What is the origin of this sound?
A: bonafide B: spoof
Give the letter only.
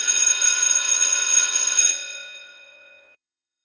B